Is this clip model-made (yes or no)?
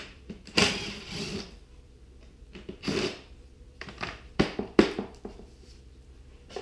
yes